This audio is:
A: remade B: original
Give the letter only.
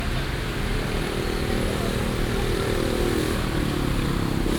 B